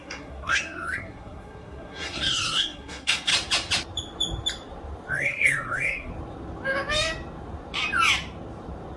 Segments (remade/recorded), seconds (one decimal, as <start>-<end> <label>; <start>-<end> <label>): 0.0-3.3 remade; 3.3-5.1 recorded; 5.1-6.1 remade; 6.1-9.0 recorded